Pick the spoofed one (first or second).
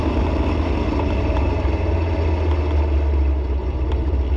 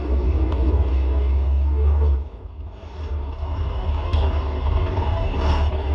second